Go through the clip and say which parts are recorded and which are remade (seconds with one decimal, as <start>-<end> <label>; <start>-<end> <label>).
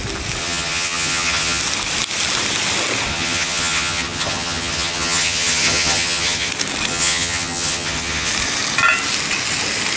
0.0-0.4 recorded; 0.4-1.6 remade; 1.6-3.1 recorded; 3.1-6.5 remade; 6.5-6.9 recorded; 6.9-8.3 remade; 8.3-10.0 recorded